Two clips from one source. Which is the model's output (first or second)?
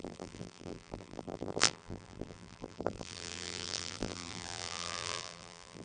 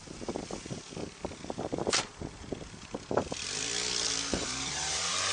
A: first